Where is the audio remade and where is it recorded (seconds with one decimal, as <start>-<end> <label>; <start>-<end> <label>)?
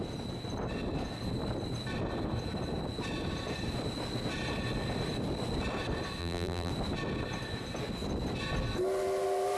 0.0-6.2 recorded; 6.2-6.7 remade; 6.7-9.6 recorded